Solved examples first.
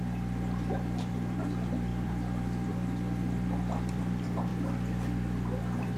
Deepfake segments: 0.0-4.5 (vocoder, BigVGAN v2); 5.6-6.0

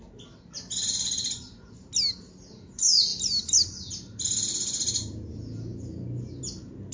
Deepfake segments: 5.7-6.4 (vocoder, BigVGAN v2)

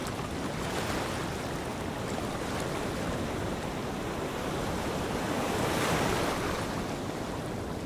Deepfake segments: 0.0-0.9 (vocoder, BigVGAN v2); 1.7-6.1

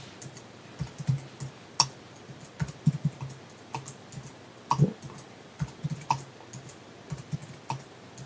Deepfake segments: none

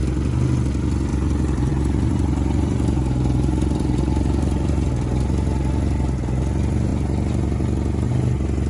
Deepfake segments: 1.1-4.9 (vocoder, BigVGAN v2)

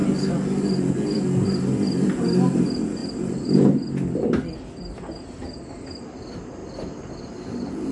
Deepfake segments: 3.0-5.2 (vocoder, BigVGAN v2); 6.6-7.9